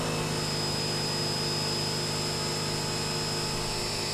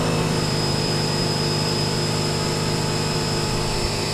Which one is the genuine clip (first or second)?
first